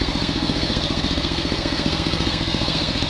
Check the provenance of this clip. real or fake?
fake